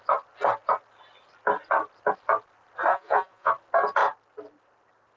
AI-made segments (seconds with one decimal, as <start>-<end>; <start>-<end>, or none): 2.9-3.5

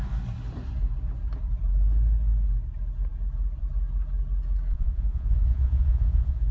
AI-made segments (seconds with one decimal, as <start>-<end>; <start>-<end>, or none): 4.7-6.5

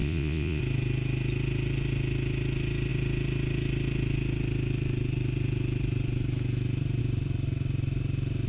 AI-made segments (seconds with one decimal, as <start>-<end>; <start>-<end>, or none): 0.0-0.6

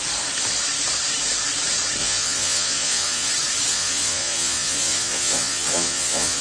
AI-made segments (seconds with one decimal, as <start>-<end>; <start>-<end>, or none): 2.0-3.3; 3.7-6.4

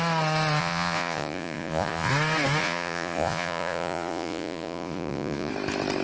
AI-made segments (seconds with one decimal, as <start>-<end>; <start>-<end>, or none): 0.6-2.1; 2.6-5.5

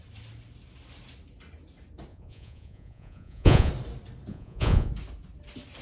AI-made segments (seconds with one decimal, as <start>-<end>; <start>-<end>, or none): 2.1-3.7; 4.3-4.9

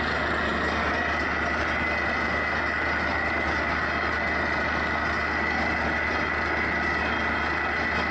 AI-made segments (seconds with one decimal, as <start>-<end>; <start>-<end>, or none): none

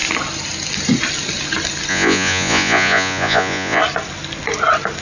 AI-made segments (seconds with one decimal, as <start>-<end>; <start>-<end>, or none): 1.9-3.8